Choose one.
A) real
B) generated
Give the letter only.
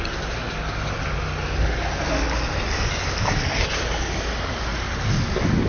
A